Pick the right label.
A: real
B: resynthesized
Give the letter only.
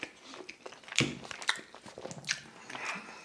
A